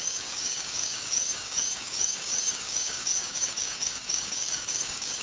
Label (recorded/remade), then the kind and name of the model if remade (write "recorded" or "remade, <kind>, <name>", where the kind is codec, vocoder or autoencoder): remade, codec, DAC